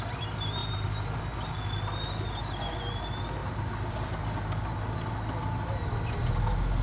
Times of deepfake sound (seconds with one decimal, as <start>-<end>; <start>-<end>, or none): 0.6-1.2; 3.4-5.1